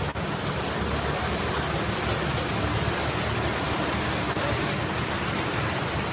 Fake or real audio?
real